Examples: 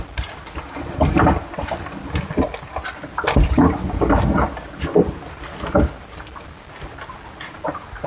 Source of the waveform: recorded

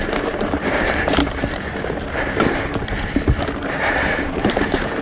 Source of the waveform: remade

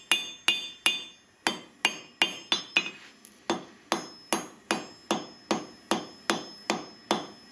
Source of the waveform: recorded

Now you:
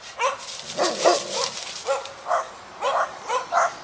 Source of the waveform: recorded